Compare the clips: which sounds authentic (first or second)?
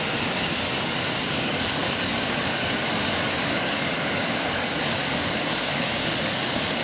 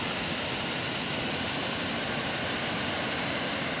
second